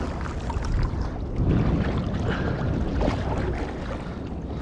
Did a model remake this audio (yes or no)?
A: no